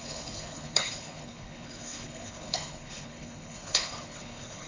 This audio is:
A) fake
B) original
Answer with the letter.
A